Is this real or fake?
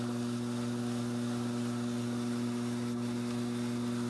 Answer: real